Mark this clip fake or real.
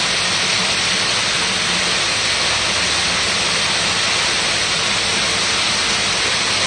real